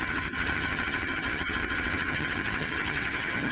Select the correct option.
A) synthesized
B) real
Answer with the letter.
A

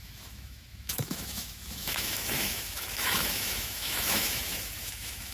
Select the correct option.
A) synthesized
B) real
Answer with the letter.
A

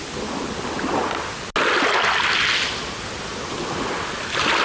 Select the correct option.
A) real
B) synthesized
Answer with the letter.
A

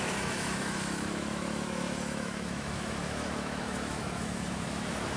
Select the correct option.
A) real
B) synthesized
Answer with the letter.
B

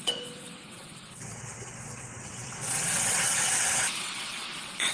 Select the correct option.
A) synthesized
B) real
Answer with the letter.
A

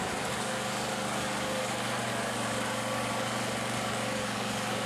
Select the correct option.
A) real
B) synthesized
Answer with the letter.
B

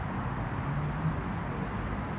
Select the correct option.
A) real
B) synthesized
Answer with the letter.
A